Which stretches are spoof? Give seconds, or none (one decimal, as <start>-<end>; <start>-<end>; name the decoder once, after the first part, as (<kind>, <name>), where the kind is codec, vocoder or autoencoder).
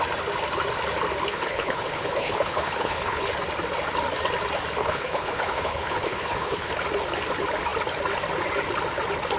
1.3-3.2 (codec, HILCodec); 4.8-6.7